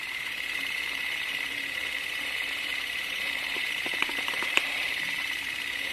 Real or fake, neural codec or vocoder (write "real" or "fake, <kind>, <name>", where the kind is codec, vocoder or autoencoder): fake, vocoder, BigVGAN v2